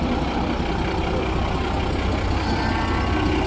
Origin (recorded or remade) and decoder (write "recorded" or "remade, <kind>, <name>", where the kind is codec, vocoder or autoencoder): recorded